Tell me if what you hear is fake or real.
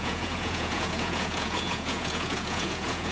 fake